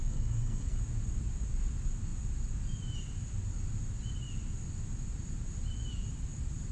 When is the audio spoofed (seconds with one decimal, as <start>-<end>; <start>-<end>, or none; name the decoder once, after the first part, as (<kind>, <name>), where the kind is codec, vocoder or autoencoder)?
0.0-0.8 (codec, SNAC)